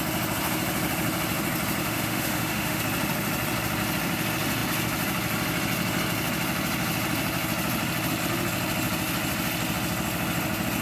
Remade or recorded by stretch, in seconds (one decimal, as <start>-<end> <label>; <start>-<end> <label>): 0.0-1.8 recorded; 1.8-2.8 remade; 2.8-10.8 recorded

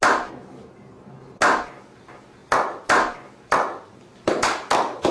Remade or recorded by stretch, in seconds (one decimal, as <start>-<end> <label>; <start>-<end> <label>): 0.0-5.1 recorded